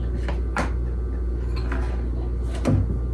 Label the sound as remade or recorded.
recorded